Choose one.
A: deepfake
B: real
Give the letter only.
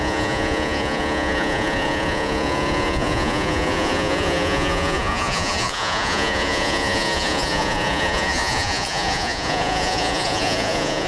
A